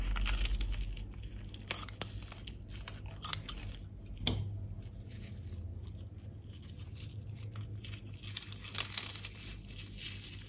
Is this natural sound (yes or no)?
yes